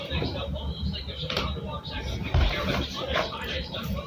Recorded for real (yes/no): no